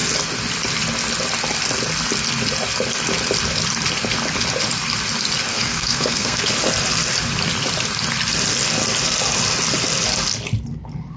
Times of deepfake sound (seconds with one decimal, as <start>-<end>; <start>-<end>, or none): 5.5-6.5